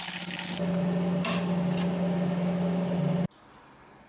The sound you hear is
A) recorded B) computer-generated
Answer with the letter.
A